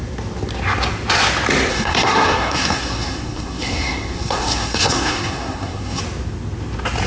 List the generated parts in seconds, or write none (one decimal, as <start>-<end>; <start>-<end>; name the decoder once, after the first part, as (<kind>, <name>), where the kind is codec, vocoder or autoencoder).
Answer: 1.7-6.0 (codec, SNAC)